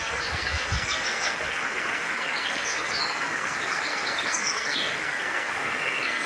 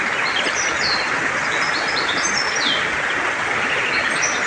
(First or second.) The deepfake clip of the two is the first